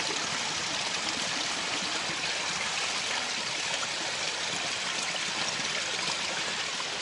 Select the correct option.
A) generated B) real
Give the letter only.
B